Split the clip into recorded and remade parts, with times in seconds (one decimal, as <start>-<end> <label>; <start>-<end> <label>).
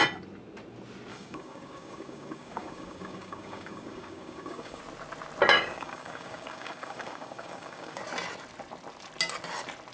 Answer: 0.0-1.1 recorded; 1.1-4.8 remade; 4.8-5.5 recorded; 5.5-8.0 remade; 8.0-9.9 recorded